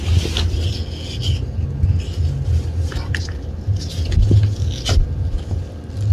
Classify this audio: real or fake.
real